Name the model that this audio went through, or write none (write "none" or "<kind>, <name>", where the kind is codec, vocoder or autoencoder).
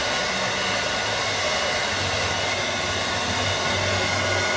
none